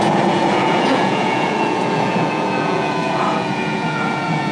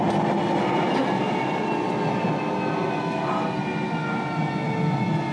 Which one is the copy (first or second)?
first